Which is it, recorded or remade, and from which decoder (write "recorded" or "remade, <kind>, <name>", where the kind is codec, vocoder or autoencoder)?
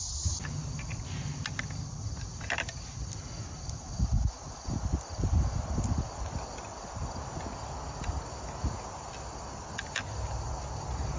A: recorded